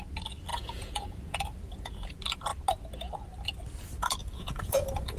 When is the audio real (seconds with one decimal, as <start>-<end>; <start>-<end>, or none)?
0.0-0.5; 2.1-4.2